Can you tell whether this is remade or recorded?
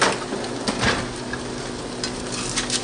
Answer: recorded